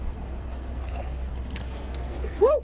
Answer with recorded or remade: remade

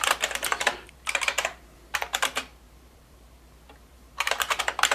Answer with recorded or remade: remade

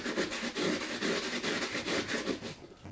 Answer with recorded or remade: recorded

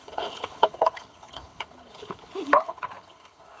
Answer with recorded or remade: remade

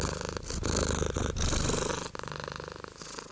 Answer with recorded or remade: recorded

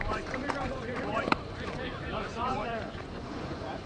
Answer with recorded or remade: remade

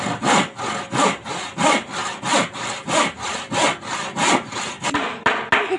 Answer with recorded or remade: recorded